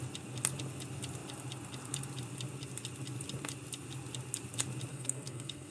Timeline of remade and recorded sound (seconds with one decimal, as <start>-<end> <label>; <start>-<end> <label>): 0.0-4.9 recorded; 4.9-5.7 remade